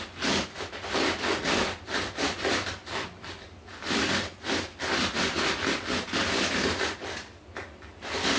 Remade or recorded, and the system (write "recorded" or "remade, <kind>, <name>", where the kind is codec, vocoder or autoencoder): recorded